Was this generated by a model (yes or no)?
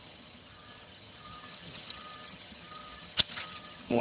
yes